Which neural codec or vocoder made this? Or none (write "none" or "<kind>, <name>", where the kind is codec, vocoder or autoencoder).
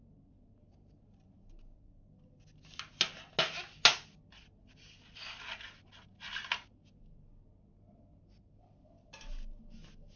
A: none